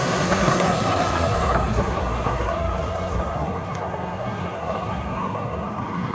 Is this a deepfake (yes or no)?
yes